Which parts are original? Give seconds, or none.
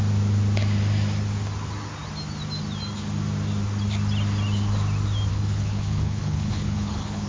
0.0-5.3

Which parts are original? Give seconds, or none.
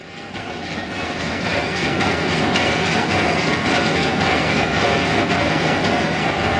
none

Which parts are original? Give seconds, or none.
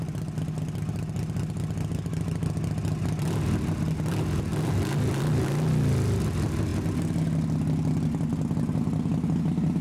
0.0-9.8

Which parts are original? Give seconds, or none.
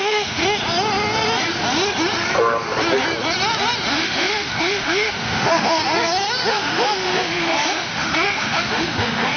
0.4-3.9; 5.8-6.5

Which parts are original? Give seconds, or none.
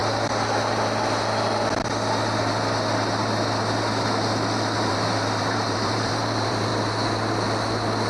0.0-4.9; 6.7-8.1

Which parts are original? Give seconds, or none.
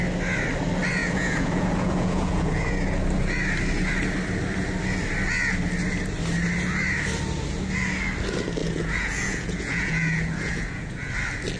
0.0-1.0; 2.6-8.6; 11.1-11.6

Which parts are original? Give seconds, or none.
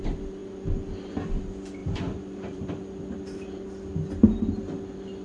0.0-1.8; 2.7-5.2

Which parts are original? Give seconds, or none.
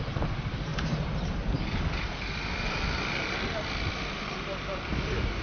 0.0-5.4